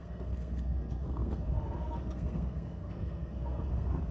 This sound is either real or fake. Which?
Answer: fake